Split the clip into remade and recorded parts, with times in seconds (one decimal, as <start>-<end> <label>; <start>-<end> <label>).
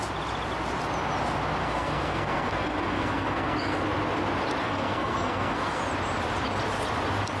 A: 0.0-1.6 recorded; 1.6-3.8 remade; 3.8-4.6 recorded; 4.6-5.8 remade; 5.8-7.4 recorded